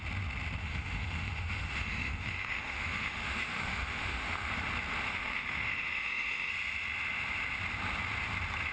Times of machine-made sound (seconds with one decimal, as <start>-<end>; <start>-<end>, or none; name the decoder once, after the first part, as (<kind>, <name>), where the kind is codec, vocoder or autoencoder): 0.6-4.5 (autoencoder, DAC-VAE); 5.1-6.5